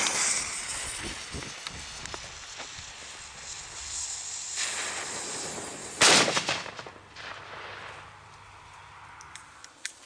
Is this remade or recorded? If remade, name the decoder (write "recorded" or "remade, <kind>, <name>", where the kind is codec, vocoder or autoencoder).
recorded